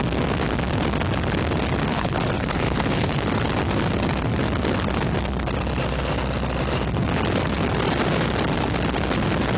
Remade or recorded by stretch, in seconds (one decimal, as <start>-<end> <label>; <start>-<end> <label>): 0.0-1.9 recorded; 1.9-3.4 remade; 3.4-9.6 recorded